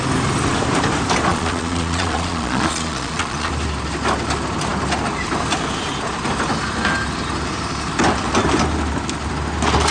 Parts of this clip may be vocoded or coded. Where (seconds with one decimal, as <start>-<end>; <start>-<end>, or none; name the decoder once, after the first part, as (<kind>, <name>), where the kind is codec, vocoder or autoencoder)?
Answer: 1.3-3.5 (vocoder, Vocos)